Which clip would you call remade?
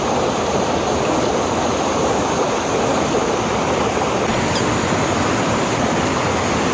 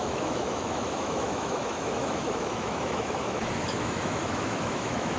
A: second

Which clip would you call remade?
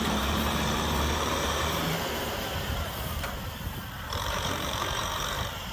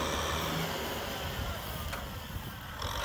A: first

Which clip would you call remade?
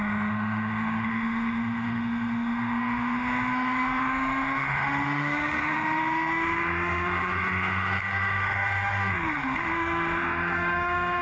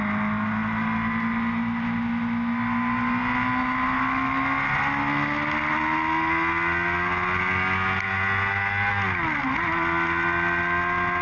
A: first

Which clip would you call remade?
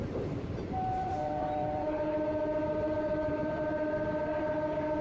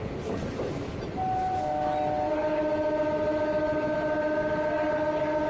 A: first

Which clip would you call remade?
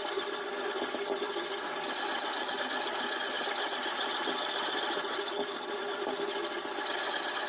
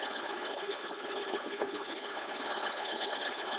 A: second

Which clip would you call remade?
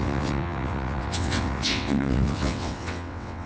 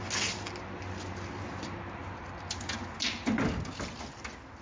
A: first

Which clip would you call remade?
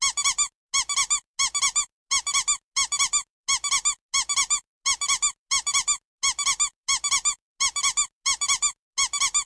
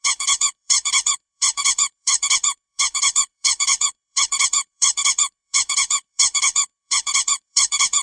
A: second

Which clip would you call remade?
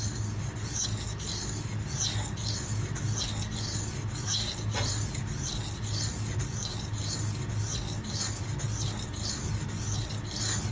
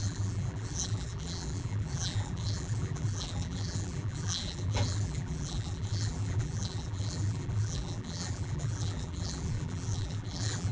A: second